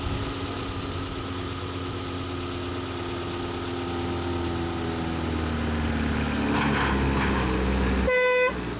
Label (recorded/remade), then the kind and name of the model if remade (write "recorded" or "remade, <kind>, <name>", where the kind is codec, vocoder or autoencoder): recorded